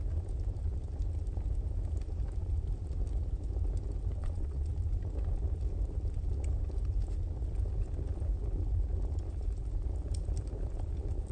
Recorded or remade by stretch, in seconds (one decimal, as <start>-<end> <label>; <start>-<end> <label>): 0.0-4.2 recorded; 4.2-4.7 remade; 4.7-11.3 recorded